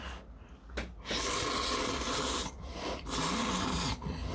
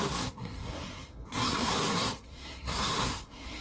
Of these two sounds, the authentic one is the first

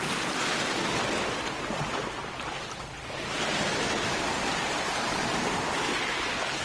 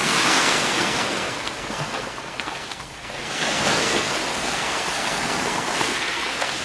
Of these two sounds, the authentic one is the first